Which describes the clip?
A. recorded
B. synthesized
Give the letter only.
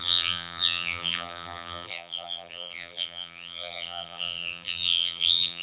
B